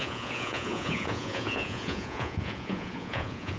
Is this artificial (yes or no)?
yes